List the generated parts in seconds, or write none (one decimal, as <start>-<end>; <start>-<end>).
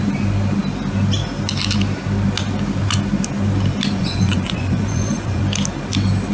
4.0-5.4